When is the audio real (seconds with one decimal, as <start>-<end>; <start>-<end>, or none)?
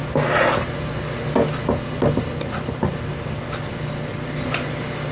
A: 0.0-5.1